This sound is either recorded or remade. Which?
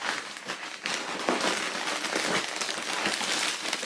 remade